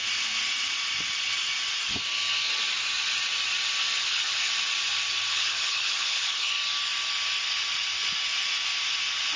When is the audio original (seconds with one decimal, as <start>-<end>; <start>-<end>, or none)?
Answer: 0.0-4.0; 4.5-5.3; 6.5-9.4